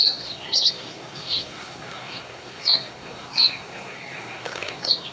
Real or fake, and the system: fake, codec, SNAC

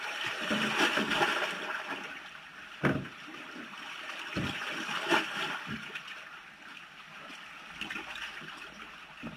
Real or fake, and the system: fake, vocoder, BigVGAN v2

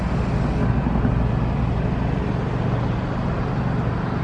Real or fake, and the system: real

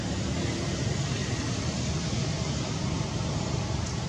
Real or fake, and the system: real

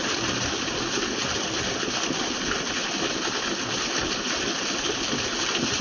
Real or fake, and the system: real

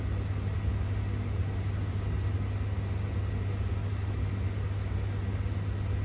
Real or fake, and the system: real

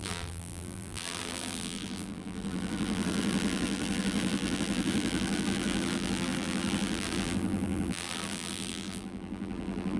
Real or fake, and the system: fake, vocoder, BigVGAN v2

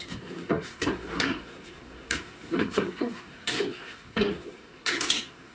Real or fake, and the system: fake, codec, SNAC